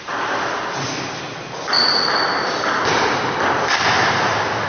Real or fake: real